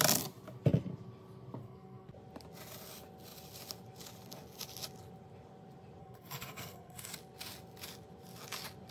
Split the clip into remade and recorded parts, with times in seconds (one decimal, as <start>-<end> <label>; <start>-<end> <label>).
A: 0.0-1.6 recorded; 1.6-2.1 remade; 2.1-6.0 recorded; 6.0-7.1 remade; 7.1-8.9 recorded

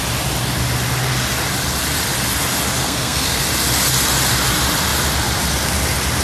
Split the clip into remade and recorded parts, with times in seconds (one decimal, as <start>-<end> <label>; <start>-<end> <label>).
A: 0.0-2.8 recorded; 2.8-3.4 remade; 3.4-6.2 recorded

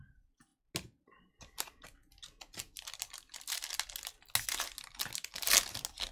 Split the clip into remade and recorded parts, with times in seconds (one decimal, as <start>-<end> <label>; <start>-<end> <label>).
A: 0.0-6.1 recorded

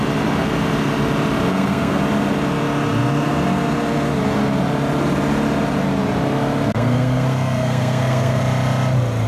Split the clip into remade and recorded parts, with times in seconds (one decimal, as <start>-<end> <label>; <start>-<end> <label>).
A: 0.0-1.5 recorded; 1.5-2.0 remade; 2.0-6.7 recorded; 6.7-8.4 remade; 8.4-9.3 recorded